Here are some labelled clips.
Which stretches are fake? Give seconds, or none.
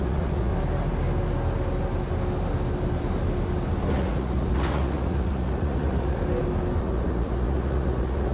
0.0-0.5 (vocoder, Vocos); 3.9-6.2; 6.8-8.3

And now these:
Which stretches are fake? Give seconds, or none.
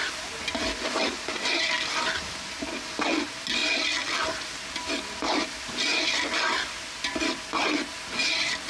none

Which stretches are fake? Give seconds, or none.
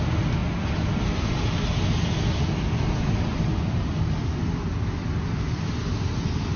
none